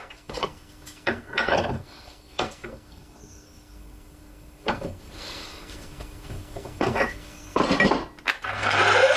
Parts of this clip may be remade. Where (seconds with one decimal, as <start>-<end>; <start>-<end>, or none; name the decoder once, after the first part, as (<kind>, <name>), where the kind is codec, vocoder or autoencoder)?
0.0-7.6 (codec, SNAC); 8.4-9.2